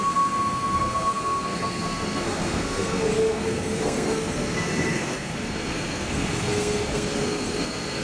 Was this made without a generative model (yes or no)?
no